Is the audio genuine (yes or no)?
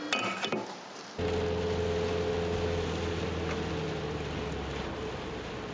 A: yes